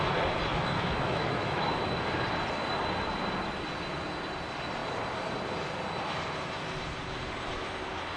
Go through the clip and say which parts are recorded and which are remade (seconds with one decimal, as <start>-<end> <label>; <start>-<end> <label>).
0.0-0.5 recorded; 0.5-2.1 remade; 2.1-8.2 recorded